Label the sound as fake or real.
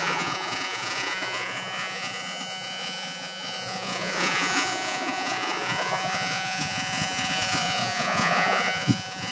fake